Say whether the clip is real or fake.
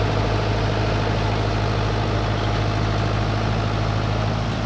real